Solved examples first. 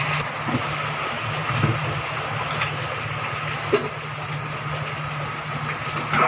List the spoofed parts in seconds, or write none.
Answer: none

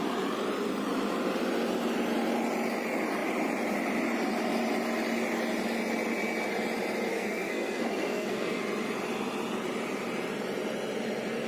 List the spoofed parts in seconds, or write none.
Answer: 7.1-8.6 (codec, SNAC)

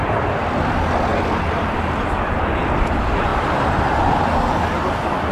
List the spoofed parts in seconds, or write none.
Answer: none

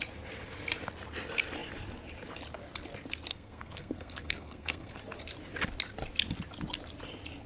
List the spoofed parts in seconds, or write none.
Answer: 3.3-5.0 (codec, SNAC)

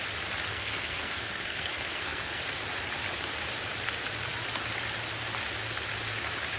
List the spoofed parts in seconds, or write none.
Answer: 0.5-2.4 (codec, SNAC)

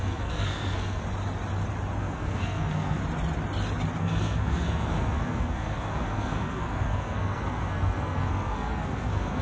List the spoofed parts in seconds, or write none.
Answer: 0.0-1.0 (codec, SNAC); 2.0-3.0; 4.0-9.4

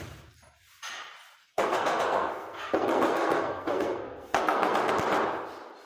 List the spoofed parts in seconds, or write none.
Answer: 1.4-4.9 (codec, SNAC)

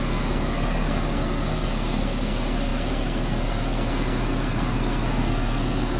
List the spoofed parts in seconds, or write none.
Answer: 0.0-6.0 (codec, SNAC)